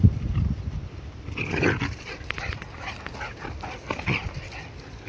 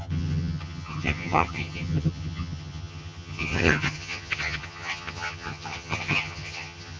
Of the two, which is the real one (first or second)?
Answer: first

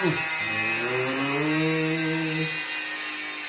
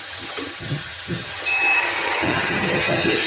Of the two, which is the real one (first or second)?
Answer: first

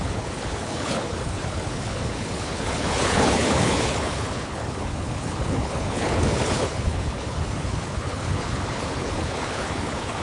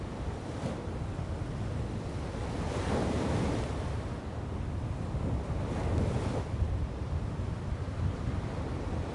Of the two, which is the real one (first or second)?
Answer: second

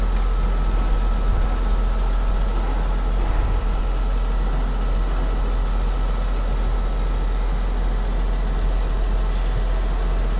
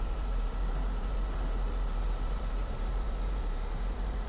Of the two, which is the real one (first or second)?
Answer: first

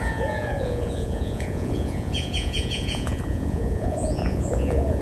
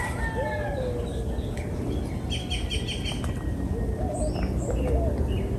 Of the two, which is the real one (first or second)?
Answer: second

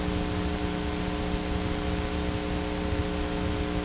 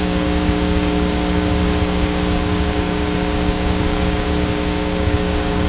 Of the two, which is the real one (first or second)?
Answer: first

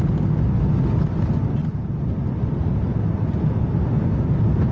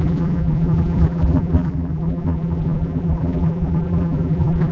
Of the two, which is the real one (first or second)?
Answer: first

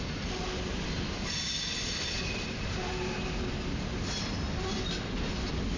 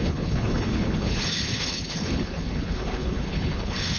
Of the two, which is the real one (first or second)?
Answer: first